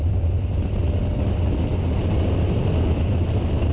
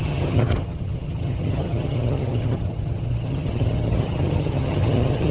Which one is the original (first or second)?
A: first